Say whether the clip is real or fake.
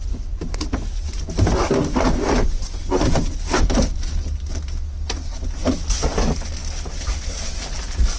real